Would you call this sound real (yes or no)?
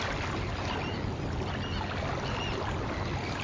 yes